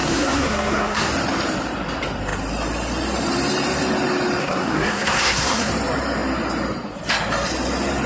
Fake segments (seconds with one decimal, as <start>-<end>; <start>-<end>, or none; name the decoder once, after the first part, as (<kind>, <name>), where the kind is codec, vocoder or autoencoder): 0.0-1.1 (codec, SNAC); 4.4-5.7